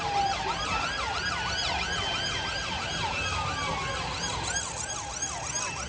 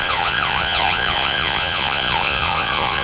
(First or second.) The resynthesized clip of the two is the second